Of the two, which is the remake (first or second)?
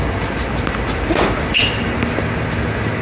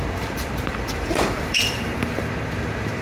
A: second